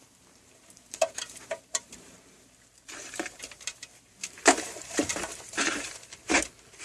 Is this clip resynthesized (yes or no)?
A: yes